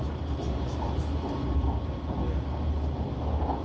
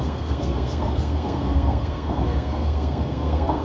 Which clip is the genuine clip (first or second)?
first